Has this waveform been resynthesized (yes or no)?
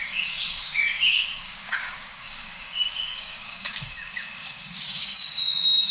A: yes